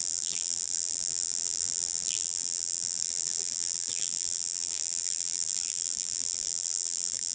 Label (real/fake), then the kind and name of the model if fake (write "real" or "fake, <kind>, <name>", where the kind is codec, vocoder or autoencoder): fake, vocoder, BigVGAN v2